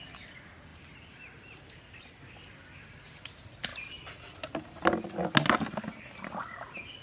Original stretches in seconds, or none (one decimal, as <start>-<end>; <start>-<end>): 0.0-0.7; 1.6-7.0